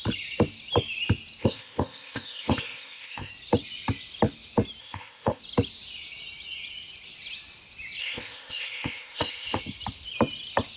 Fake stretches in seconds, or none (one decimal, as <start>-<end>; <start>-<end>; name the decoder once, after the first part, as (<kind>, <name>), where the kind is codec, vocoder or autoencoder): 1.4-3.3 (codec, ZipCodec); 4.8-5.4; 8.0-9.6